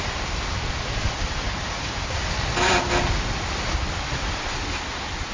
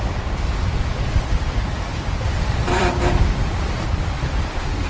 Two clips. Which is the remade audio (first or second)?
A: second